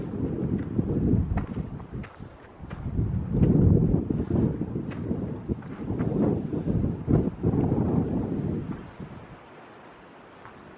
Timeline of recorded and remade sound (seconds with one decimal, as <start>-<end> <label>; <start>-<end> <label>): 0.0-10.8 recorded